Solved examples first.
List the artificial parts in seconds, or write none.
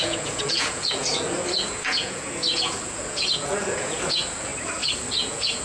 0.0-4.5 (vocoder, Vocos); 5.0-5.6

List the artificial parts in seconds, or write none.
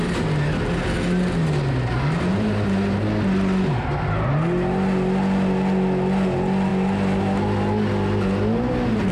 none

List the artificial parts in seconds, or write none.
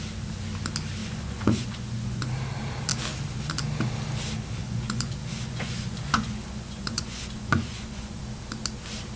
1.0-2.3 (vocoder, Vocos); 4.6-8.2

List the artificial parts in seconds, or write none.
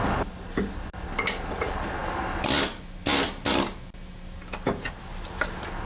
none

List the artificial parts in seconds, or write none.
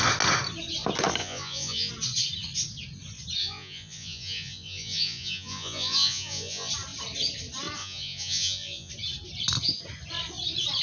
1.2-1.9 (vocoder, Vocos); 3.4-6.7; 7.8-8.9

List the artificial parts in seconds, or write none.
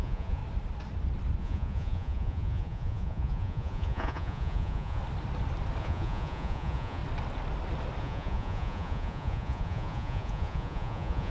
0.0-0.4 (vocoder, Vocos); 1.4-5.0; 5.8-7.0; 8.0-11.3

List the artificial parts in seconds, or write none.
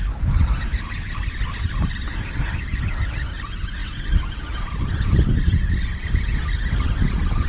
none